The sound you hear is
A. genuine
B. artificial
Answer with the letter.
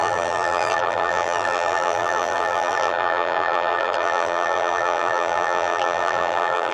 B